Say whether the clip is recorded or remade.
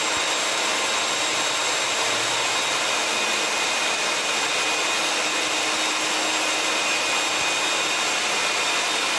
recorded